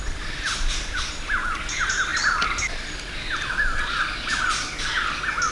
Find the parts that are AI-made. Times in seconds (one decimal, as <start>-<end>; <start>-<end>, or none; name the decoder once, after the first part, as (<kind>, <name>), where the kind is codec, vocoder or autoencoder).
none